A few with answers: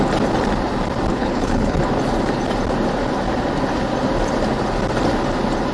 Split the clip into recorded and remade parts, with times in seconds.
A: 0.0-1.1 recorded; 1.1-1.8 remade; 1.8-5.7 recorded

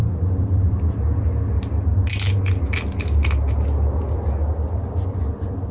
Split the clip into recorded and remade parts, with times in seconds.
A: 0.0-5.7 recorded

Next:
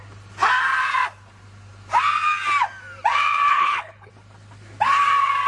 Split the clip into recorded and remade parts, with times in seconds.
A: 0.0-3.5 recorded; 3.5-4.1 remade; 4.1-5.5 recorded

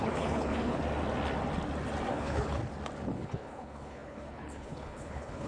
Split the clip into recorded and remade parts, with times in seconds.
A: 0.0-0.8 remade; 0.8-2.1 recorded; 2.1-2.6 remade; 2.6-3.1 recorded; 3.1-5.5 remade